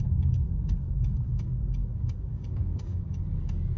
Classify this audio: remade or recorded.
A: remade